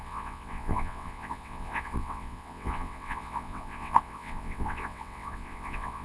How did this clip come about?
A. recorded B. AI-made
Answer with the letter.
B